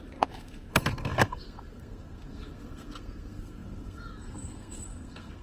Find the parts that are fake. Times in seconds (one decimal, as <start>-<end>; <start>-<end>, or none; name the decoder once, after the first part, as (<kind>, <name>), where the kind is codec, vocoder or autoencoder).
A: 0.0-5.4 (codec, SNAC)